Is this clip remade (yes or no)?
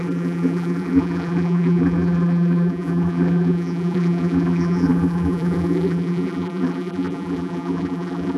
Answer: yes